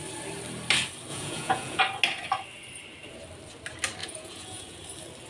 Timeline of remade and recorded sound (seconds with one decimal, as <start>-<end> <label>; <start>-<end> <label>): 0.0-1.1 recorded; 1.1-1.8 remade; 1.8-4.0 recorded; 4.0-4.8 remade; 4.8-5.3 recorded